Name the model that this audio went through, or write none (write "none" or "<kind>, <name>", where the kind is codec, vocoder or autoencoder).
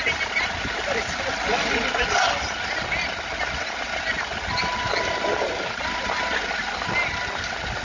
none